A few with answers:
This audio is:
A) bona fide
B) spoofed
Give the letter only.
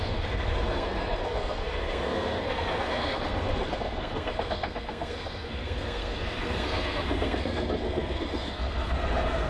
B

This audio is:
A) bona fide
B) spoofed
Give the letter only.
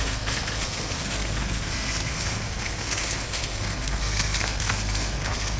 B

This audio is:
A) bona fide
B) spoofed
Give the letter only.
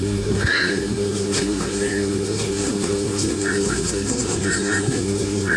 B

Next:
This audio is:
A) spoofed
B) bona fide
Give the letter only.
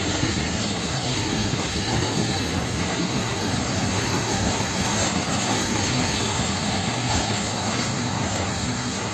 A